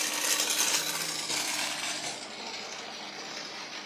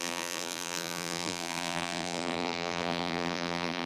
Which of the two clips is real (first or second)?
first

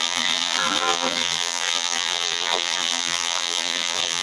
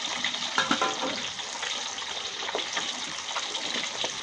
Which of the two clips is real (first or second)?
second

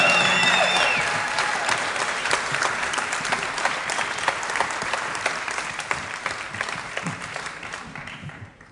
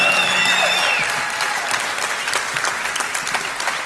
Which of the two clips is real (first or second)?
second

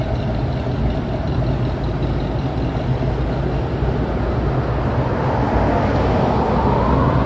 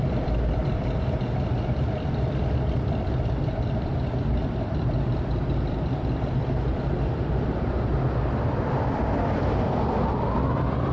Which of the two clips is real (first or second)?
first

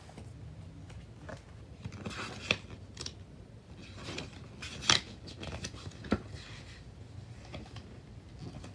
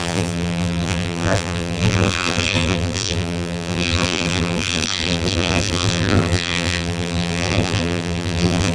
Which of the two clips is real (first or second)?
first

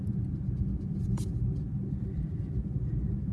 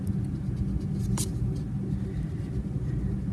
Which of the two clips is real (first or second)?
second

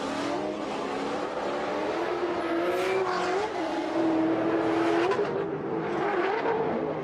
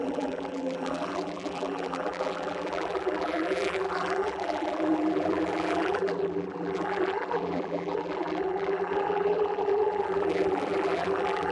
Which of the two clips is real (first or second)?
first